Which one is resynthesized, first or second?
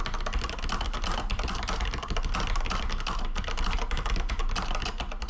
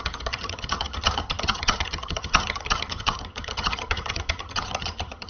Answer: second